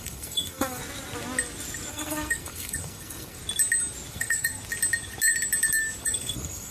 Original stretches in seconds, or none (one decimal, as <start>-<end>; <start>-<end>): 0.8-1.9; 3.4-4.1; 4.6-6.0